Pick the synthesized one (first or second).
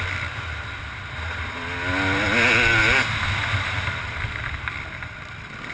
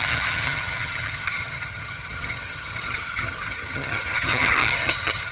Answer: second